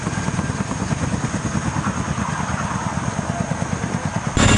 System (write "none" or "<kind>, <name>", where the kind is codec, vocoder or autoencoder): none